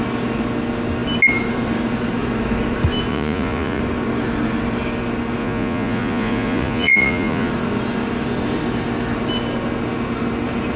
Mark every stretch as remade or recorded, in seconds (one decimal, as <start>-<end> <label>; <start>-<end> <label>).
0.0-3.1 recorded; 3.1-3.8 remade; 3.8-5.4 recorded; 5.4-7.5 remade; 7.5-10.8 recorded